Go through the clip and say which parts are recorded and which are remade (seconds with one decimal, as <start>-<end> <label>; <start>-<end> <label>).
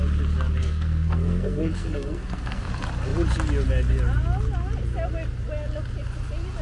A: 0.0-0.6 recorded; 0.6-2.7 remade; 2.7-6.6 recorded